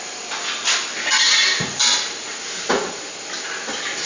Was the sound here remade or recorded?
recorded